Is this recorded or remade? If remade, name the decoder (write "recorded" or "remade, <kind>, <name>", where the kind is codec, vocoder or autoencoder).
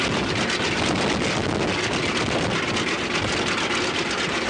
recorded